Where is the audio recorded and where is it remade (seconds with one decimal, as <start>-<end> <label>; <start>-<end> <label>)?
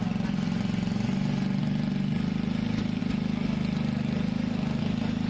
0.0-5.3 recorded